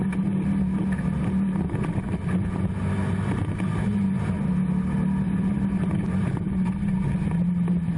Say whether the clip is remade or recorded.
recorded